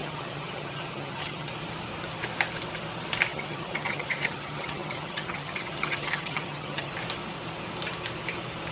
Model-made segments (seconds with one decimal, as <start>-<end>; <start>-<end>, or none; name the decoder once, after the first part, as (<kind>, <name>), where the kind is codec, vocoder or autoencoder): 0.0-1.5 (vocoder, HiFi-GAN); 3.3-6.9